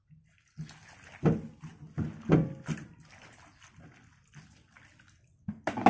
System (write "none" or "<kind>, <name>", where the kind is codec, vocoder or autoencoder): none